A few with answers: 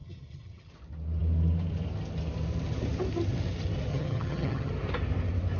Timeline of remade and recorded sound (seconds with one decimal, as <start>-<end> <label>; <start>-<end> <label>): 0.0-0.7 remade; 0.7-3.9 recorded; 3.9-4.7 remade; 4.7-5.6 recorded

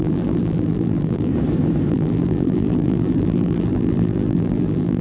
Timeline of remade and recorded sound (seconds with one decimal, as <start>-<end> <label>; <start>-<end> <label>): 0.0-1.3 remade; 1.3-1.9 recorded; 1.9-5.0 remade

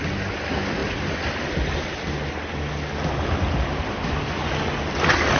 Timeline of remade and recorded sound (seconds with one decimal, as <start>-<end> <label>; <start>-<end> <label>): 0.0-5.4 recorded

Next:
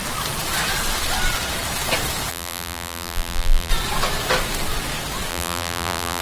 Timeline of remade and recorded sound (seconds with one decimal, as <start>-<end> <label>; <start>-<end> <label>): 0.0-2.3 recorded; 2.3-3.7 remade; 3.7-5.3 recorded; 5.3-6.2 remade

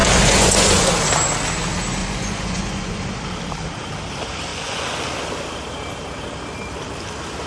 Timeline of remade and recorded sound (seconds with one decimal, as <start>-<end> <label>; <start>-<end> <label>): 0.0-1.1 remade; 1.1-2.0 recorded; 2.0-3.0 remade; 3.0-4.5 recorded; 4.5-5.1 remade; 5.1-7.5 recorded

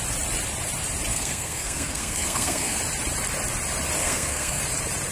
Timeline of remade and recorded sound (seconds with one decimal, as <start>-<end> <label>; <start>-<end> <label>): 0.0-1.1 recorded; 1.1-2.8 remade; 2.8-4.0 recorded; 4.0-4.6 remade; 4.6-5.1 recorded

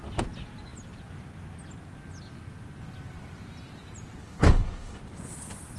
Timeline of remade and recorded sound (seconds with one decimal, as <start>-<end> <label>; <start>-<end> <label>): 0.0-4.2 recorded; 4.2-5.0 remade; 5.0-5.8 recorded